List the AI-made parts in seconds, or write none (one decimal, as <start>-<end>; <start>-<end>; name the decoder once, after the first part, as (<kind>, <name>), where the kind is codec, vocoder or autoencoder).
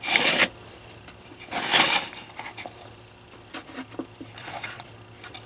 4.4-4.9 (vocoder, Vocos)